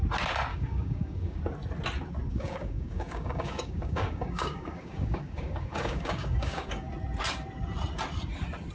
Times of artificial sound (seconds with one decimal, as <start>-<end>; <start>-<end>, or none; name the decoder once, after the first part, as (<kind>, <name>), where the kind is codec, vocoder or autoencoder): 0.5-1.4 (codec, DAC); 2.3-6.9